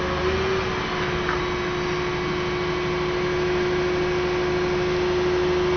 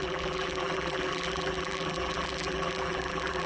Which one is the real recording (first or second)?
first